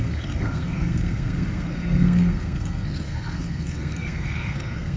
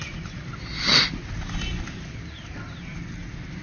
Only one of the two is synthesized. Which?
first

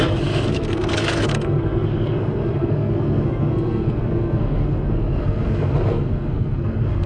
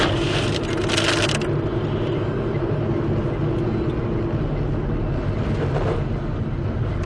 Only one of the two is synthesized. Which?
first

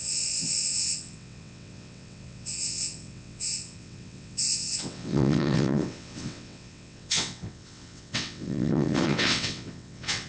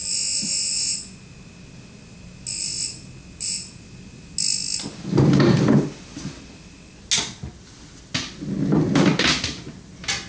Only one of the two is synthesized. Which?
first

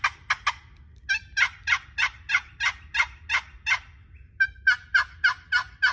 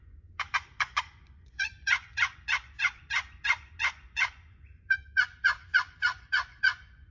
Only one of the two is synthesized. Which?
second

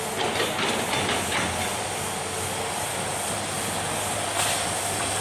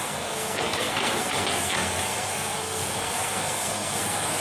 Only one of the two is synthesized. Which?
second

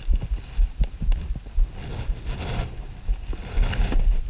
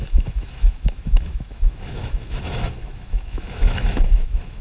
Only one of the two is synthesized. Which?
second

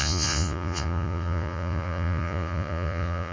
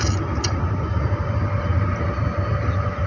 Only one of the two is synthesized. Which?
first